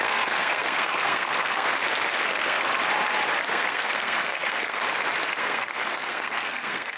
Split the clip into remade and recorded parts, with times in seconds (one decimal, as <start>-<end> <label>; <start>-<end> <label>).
0.0-1.7 remade; 1.7-2.3 recorded; 2.3-2.7 remade; 2.7-3.5 recorded; 3.5-4.8 remade; 4.8-5.4 recorded; 5.4-7.0 remade